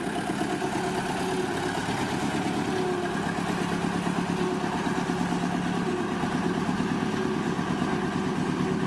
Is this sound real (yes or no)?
yes